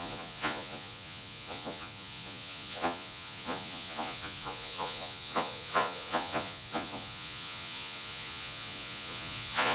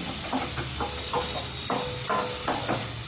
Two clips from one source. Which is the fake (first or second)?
first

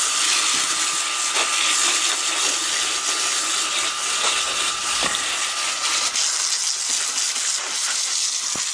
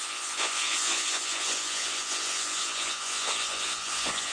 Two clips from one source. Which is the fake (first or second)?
second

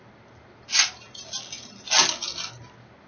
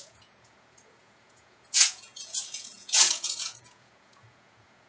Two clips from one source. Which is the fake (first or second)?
second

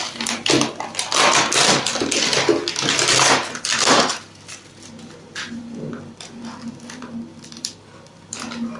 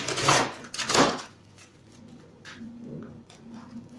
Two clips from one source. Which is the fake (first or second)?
second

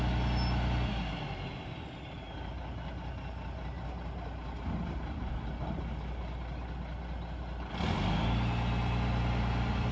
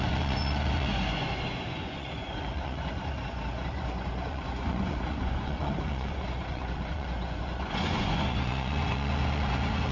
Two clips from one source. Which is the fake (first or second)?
second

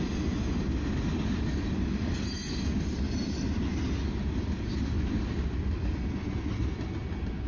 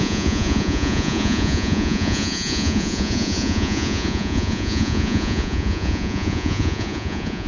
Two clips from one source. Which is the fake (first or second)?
second